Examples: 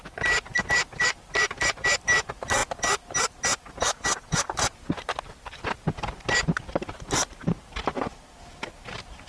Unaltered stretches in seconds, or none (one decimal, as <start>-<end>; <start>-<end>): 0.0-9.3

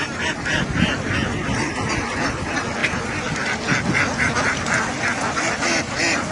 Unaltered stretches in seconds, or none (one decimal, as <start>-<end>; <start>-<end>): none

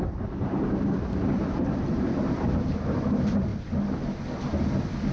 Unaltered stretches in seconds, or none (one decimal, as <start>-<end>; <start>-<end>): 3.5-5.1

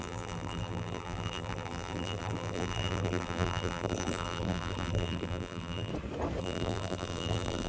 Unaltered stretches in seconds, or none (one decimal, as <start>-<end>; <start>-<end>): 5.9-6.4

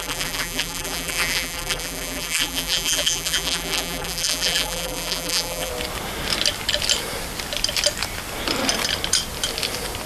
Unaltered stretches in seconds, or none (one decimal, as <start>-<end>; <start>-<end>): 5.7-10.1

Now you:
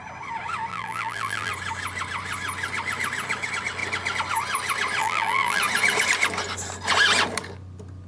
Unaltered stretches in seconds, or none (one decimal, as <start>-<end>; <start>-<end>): 0.0-0.7; 1.5-5.0; 5.6-8.1

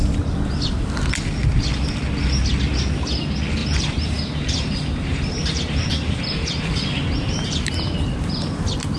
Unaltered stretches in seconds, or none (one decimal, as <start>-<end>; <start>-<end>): 0.0-3.6; 6.6-9.0